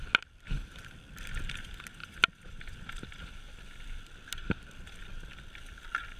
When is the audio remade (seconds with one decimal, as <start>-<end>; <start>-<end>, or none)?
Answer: none